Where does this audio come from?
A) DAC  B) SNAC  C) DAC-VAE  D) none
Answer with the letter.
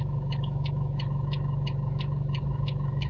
C